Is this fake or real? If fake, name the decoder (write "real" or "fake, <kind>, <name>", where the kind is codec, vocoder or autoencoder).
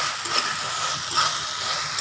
real